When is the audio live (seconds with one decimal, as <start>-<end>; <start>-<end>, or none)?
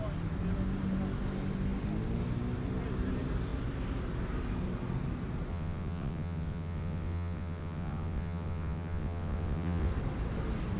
0.0-5.5; 9.9-10.8